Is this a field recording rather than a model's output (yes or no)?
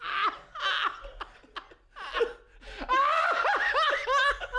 yes